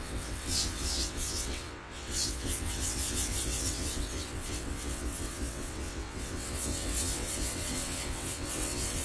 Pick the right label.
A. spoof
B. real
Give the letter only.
A